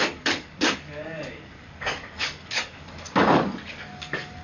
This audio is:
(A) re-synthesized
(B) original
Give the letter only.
A